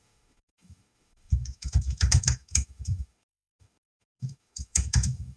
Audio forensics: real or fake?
fake